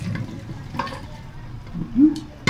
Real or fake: real